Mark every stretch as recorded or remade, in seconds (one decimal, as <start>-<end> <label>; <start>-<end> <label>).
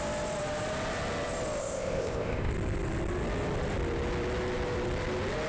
0.0-1.6 recorded; 1.6-2.5 remade; 2.5-5.5 recorded